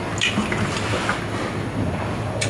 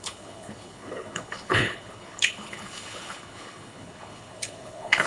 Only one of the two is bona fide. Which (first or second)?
first